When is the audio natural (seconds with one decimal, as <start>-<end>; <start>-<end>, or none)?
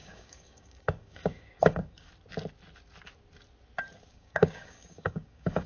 2.1-4.1